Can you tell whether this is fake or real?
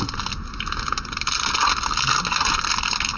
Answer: real